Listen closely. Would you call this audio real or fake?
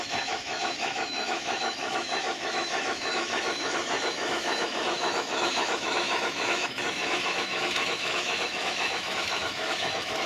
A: fake